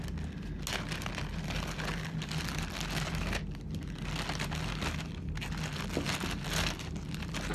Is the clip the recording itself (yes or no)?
yes